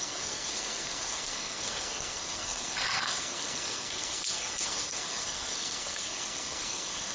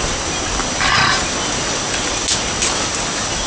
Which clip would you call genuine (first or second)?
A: second